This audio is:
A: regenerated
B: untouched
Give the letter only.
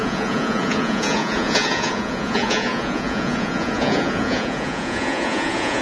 A